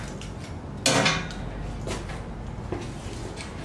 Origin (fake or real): real